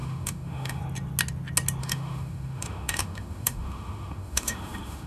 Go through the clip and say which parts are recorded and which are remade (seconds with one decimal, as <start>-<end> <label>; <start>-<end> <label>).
0.0-0.8 remade; 0.8-1.8 recorded; 1.8-5.1 remade